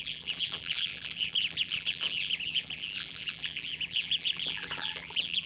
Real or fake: fake